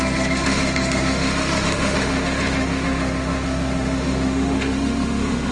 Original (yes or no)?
no